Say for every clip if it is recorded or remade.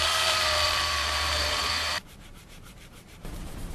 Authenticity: remade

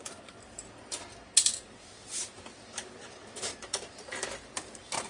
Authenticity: remade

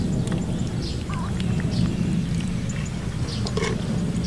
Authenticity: recorded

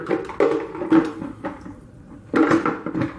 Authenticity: recorded